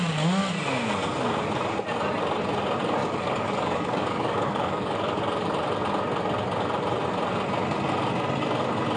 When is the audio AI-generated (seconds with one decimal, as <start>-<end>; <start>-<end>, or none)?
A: 3.0-5.2